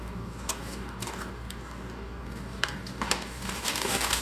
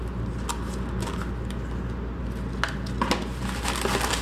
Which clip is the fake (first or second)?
first